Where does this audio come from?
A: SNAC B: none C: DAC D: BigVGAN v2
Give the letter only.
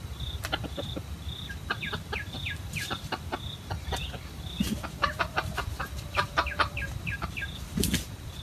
D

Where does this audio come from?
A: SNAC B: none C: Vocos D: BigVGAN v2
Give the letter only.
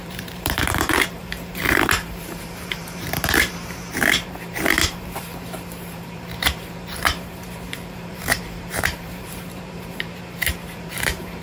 D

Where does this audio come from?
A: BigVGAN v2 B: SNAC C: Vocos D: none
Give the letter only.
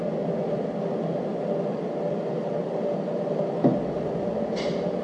D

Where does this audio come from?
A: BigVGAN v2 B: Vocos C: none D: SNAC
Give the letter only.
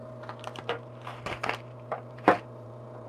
A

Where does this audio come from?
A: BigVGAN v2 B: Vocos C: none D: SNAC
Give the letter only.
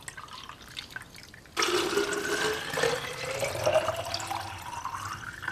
C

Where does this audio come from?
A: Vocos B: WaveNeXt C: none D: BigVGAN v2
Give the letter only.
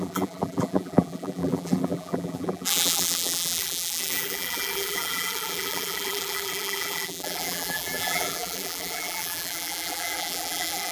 D